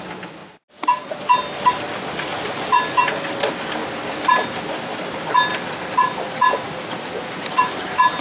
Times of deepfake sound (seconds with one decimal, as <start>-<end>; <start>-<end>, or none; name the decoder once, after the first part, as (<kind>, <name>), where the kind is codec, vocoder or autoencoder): none